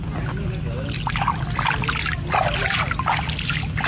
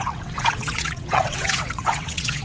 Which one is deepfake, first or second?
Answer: second